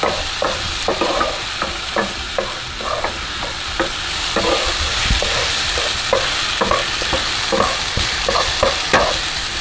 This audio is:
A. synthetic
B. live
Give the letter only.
B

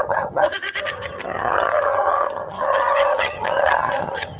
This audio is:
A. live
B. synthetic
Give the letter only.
B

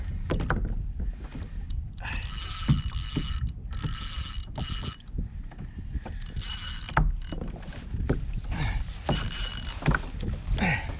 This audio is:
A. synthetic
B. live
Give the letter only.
B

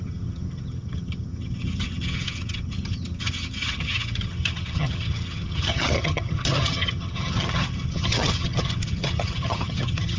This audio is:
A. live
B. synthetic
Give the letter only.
B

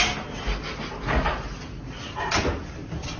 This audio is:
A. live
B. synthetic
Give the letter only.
A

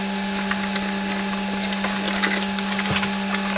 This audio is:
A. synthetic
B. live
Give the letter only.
B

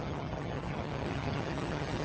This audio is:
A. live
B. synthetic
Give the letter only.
B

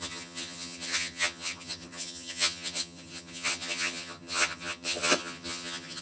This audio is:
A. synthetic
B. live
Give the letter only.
A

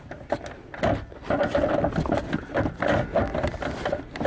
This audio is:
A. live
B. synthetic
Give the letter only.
A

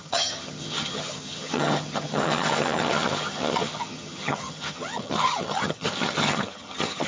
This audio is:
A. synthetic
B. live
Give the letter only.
A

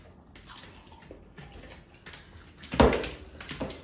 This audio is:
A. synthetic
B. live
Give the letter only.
B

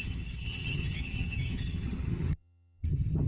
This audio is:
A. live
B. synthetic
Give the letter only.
B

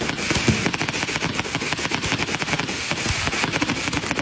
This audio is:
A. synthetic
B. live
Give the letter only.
B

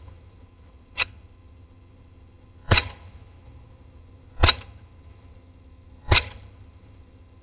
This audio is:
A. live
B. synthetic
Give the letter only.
B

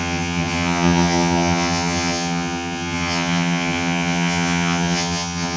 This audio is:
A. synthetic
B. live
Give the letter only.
A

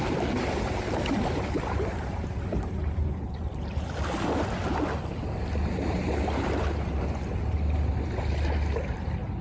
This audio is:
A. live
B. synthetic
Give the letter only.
A